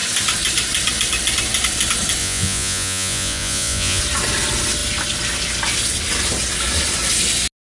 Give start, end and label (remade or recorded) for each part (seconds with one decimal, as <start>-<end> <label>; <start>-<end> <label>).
0.0-2.2 recorded; 2.2-4.0 remade; 4.0-7.6 recorded